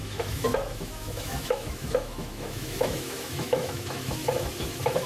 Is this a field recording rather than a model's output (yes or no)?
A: no